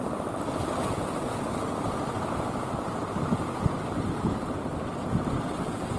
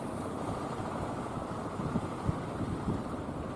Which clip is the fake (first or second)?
second